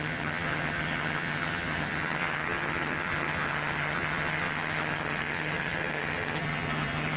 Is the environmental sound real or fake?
fake